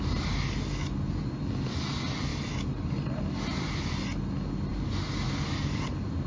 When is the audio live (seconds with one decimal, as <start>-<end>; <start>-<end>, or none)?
0.0-6.3